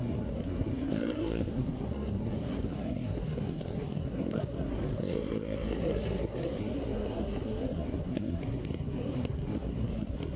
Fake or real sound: fake